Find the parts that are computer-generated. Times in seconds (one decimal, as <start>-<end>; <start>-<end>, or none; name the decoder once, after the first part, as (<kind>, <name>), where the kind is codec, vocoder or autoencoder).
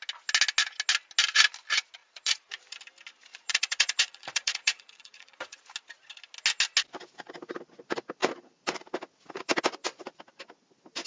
2.0-2.6 (vocoder, Vocos); 3.3-5.6